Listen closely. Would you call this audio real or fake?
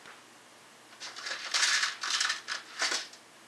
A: real